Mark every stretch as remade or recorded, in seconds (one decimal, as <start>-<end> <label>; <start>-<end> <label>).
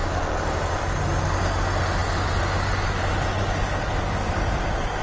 0.0-5.0 recorded